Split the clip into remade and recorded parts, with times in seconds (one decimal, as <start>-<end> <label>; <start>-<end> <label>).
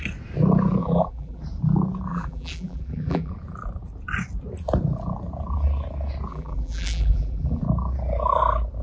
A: 0.0-0.8 recorded; 0.8-1.4 remade; 1.4-2.1 recorded; 2.1-3.3 remade; 3.3-6.3 recorded; 6.3-7.6 remade; 7.6-8.8 recorded